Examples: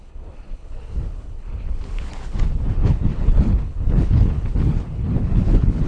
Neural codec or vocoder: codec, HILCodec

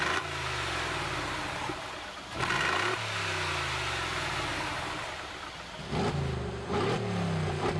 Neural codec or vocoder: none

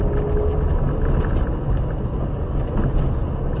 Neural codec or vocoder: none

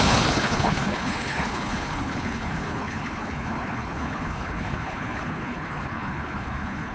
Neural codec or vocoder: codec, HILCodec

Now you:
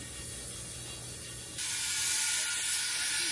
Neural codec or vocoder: none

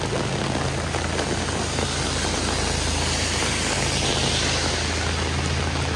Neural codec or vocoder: none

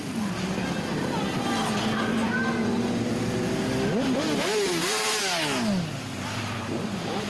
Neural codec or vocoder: none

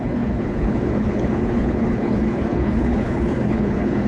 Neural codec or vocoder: codec, HILCodec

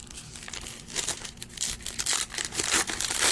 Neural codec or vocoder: none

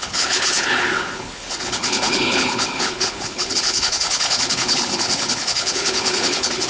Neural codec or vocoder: codec, HILCodec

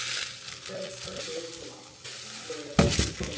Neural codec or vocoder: none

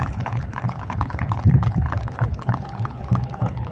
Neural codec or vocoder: codec, HILCodec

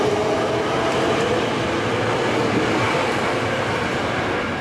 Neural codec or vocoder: none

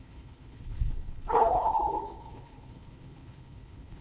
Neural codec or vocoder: codec, HILCodec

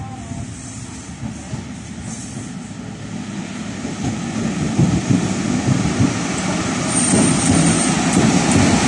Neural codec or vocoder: none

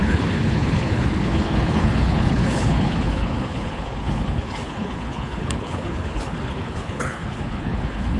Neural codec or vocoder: codec, HILCodec